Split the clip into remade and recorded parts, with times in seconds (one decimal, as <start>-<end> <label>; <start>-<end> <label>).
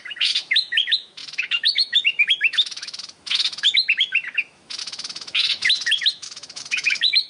0.0-7.3 remade